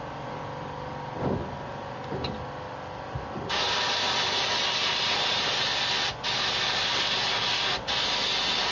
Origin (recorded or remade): recorded